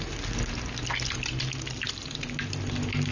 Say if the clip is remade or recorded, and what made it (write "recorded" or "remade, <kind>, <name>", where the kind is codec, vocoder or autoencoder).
recorded